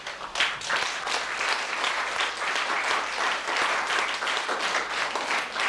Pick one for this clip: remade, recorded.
recorded